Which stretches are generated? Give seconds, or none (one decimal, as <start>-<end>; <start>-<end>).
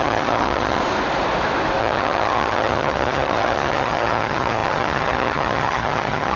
0.0-0.8; 1.8-6.4